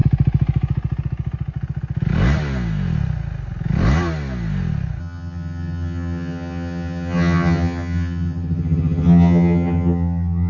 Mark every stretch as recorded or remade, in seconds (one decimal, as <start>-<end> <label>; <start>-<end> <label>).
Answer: 0.0-5.0 recorded; 5.0-10.5 remade